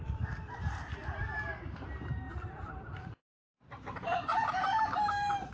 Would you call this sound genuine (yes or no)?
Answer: no